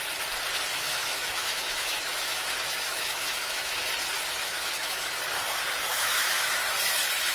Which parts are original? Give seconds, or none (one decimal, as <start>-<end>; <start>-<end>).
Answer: 0.0-0.7; 3.8-4.4; 5.1-5.9; 6.5-7.3